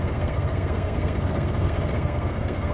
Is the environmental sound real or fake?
fake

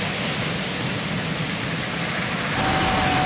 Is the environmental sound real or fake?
real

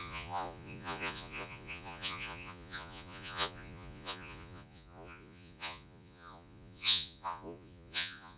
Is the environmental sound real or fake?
fake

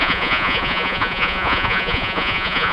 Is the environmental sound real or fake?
fake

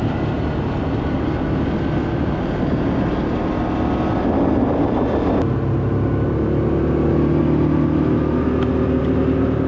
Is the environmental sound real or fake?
real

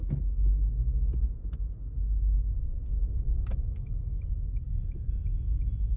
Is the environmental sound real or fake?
real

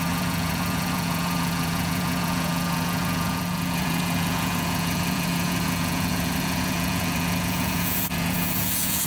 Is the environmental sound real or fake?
fake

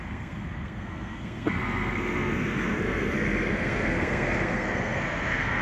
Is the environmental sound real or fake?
fake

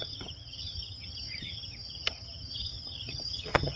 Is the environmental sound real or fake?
fake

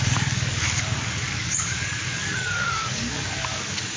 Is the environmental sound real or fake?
fake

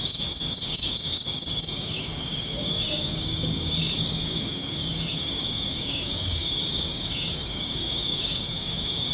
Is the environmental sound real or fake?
fake